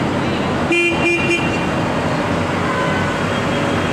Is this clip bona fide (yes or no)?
yes